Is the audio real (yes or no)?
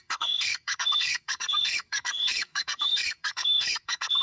no